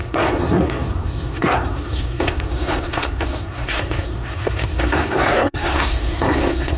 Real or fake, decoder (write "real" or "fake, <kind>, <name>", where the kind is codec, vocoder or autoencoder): fake, codec, SNAC